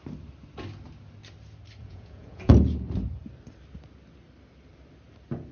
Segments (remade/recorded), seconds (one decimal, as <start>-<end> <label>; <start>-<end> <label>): 0.0-1.8 recorded; 1.8-2.5 remade; 2.5-5.5 recorded